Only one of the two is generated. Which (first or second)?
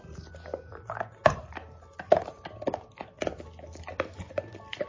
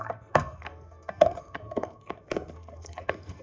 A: second